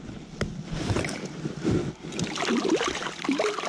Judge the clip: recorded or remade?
recorded